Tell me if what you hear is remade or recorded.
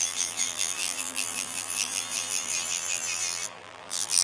remade